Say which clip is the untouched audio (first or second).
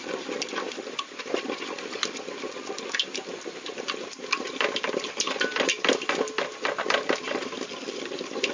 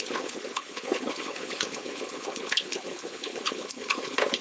first